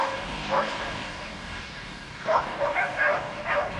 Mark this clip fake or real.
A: fake